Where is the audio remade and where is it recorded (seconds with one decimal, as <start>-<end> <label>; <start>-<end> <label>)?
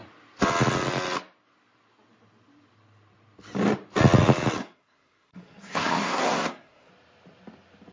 0.0-4.6 recorded; 4.6-6.9 remade; 6.9-7.9 recorded